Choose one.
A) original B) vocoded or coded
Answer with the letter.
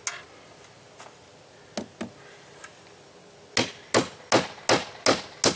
A